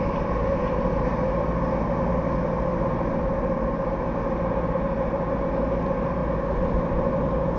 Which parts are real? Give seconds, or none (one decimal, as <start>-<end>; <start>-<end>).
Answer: 0.0-7.6